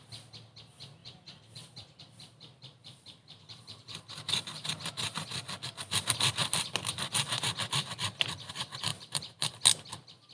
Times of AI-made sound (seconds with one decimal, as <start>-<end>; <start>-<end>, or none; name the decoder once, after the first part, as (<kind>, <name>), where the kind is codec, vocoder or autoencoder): 1.0-2.0 (vocoder, BigVGAN v2); 2.8-4.0; 8.9-9.5